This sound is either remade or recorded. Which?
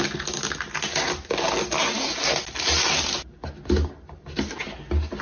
recorded